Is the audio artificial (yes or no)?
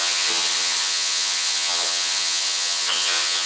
yes